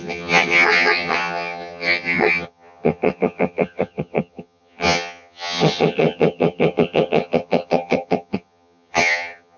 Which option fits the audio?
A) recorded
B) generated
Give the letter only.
B